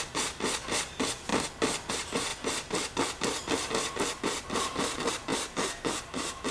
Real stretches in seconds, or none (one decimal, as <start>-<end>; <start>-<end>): 0.0-6.5